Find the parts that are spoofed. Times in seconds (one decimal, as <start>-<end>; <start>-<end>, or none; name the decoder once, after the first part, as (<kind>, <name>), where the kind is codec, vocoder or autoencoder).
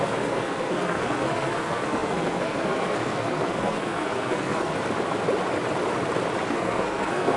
0.0-4.7 (codec, SNAC); 6.5-7.4